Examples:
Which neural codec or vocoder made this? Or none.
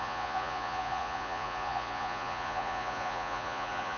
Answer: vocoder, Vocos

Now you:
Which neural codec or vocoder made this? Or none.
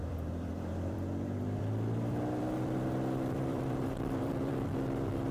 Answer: vocoder, BigVGAN v2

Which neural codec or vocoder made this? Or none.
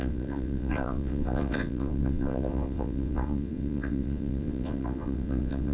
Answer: vocoder, WaveNeXt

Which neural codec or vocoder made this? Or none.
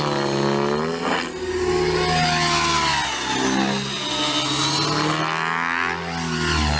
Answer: none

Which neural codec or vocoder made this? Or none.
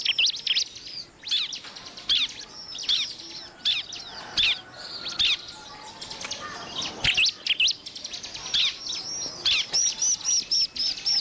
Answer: none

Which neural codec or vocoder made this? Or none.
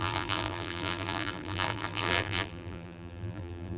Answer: vocoder, BigVGAN v2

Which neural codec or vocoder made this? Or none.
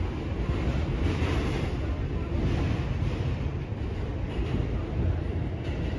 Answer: none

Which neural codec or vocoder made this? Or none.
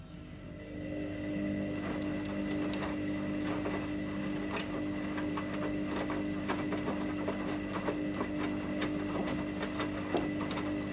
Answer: none